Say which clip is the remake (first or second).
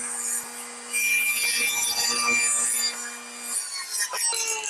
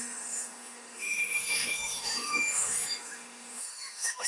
second